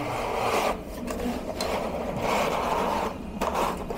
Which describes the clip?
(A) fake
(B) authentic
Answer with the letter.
A